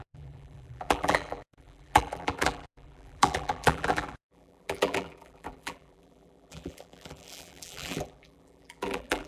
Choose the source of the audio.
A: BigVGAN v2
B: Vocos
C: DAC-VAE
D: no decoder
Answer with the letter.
A